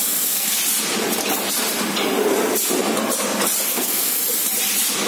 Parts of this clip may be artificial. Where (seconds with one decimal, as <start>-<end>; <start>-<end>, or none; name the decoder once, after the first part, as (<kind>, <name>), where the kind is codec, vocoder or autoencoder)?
0.0-0.6 (codec, SNAC); 3.7-4.2